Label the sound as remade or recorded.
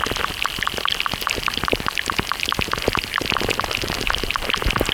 recorded